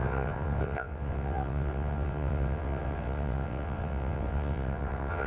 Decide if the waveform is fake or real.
fake